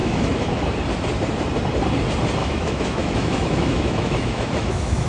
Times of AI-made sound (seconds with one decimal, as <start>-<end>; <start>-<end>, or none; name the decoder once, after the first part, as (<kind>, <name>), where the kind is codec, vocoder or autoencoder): 0.0-0.6 (autoencoder, DAC-VAE); 2.4-5.1